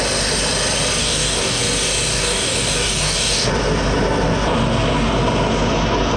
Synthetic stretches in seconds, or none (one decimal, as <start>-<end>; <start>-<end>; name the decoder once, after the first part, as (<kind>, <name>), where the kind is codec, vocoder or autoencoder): 1.0-1.6 (codec, DAC); 2.1-3.5